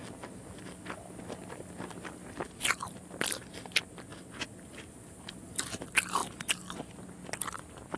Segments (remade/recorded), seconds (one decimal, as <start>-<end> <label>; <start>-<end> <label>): 0.0-8.0 recorded